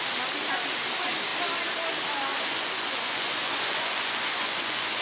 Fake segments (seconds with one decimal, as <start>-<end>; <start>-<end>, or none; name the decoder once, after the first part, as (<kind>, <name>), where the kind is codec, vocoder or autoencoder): 2.3-5.0 (vocoder, Vocos)